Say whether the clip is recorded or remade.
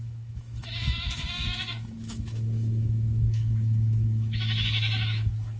remade